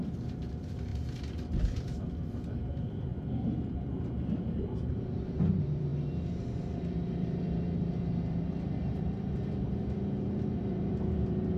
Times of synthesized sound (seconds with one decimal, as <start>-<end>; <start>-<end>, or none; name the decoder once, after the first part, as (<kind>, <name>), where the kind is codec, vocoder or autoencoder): 0.0-3.1 (vocoder, BigVGAN v2); 4.9-5.9; 7.0-11.6